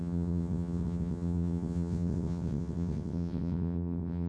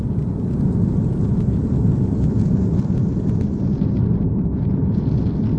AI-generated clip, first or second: first